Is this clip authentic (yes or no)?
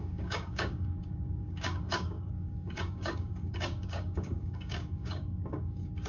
no